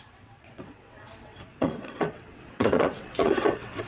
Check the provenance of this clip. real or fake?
fake